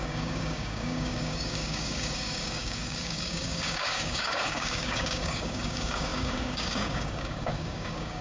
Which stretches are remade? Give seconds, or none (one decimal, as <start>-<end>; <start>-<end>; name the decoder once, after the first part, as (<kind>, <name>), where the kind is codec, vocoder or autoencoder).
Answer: 0.0-8.2 (codec, DAC)